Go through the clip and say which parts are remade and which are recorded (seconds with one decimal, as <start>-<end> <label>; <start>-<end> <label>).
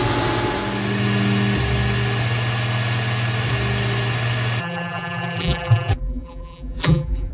0.0-4.6 recorded; 4.6-7.3 remade